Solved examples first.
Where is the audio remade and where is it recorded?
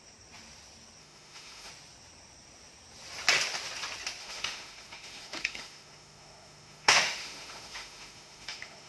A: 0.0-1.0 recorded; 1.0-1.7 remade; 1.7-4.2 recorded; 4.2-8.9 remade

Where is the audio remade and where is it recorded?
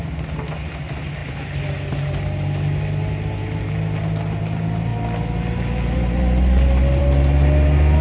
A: 0.0-8.0 recorded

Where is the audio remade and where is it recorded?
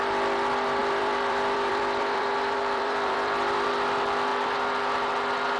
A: 0.0-0.8 recorded; 0.8-3.7 remade; 3.7-5.6 recorded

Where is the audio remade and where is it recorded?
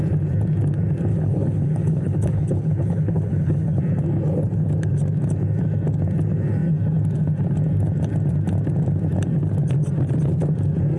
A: 0.0-1.1 recorded; 1.1-3.8 remade; 3.8-11.0 recorded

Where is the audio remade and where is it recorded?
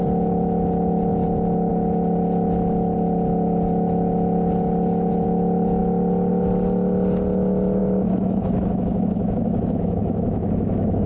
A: 0.0-7.8 recorded; 7.8-11.1 remade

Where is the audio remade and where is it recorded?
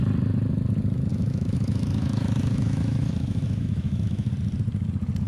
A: 0.0-1.1 recorded; 1.1-4.3 remade; 4.3-5.3 recorded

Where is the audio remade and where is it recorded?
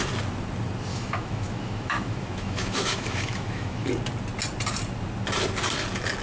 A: 0.0-0.9 recorded; 0.9-3.9 remade; 3.9-6.2 recorded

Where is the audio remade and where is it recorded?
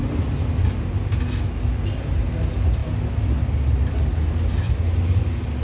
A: 0.0-5.6 recorded